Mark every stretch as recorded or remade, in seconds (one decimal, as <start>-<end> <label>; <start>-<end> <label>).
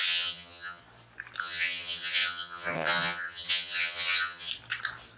0.0-0.8 remade; 0.8-1.4 recorded; 1.4-4.5 remade; 4.5-5.2 recorded